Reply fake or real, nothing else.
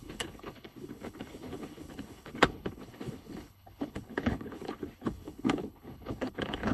fake